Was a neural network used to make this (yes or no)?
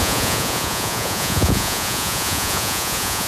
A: yes